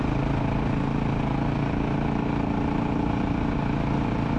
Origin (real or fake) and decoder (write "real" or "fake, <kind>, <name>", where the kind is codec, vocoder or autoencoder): real